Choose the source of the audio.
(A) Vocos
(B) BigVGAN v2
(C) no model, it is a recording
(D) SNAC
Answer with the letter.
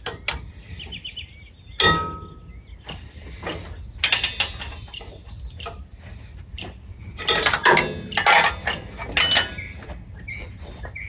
C